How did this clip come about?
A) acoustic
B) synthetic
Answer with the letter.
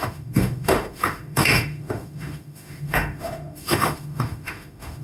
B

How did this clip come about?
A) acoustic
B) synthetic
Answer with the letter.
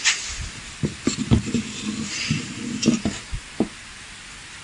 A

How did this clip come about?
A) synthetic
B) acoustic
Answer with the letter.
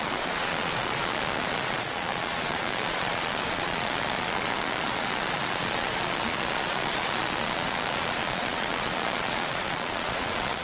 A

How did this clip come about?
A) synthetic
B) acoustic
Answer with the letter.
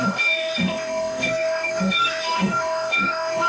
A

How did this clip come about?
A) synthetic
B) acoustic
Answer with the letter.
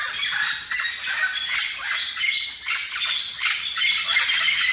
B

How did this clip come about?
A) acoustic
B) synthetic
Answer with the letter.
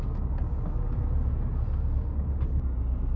A